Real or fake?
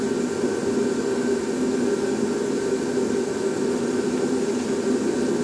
real